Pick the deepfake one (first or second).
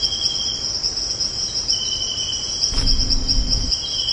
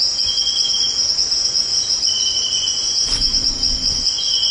second